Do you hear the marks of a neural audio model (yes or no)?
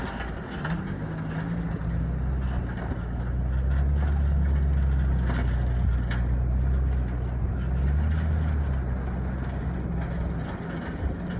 no